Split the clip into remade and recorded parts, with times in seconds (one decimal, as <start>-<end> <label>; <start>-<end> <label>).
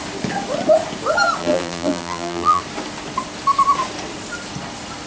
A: 0.0-1.4 recorded; 1.4-2.6 remade; 2.6-5.1 recorded